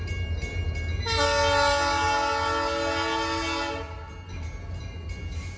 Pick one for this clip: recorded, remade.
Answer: recorded